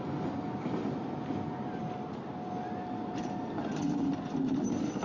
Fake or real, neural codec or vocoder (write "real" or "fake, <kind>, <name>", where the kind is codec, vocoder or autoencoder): real